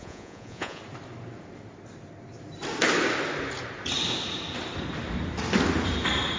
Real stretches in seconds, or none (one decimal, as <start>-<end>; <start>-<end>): 0.8-6.4